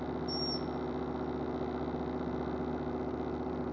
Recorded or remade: recorded